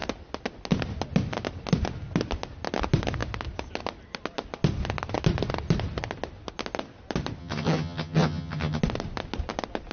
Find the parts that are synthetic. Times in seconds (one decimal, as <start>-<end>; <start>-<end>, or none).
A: 7.4-8.8